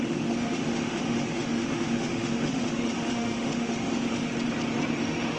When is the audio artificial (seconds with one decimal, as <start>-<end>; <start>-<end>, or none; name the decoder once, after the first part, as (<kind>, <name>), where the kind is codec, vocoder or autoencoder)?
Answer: 0.0-4.3 (autoencoder, DAC-VAE); 5.0-5.4